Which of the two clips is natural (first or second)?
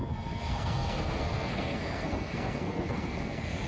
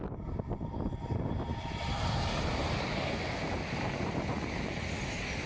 second